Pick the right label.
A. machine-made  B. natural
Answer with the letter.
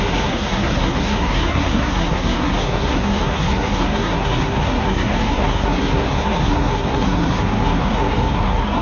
A